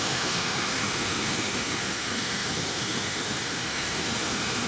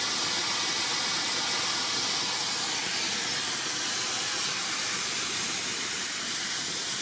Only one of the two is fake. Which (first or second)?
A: first